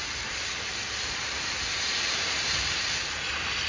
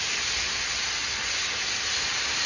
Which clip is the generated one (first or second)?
first